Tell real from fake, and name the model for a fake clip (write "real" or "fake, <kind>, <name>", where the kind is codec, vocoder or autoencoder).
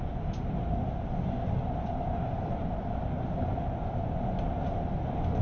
real